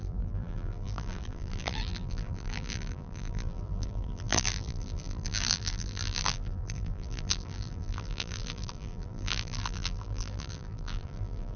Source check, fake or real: fake